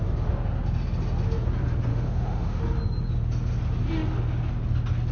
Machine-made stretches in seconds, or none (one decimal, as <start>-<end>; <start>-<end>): 1.9-2.6